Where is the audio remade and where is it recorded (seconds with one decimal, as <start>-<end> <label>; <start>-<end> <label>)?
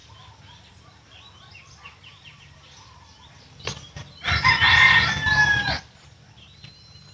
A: 0.0-4.3 remade; 4.3-7.1 recorded